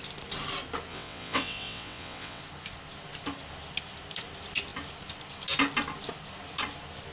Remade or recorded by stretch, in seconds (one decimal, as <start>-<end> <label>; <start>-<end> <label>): 0.0-0.9 recorded; 0.9-2.4 remade; 2.4-7.1 recorded